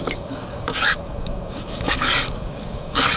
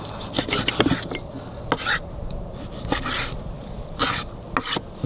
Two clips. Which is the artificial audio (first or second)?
first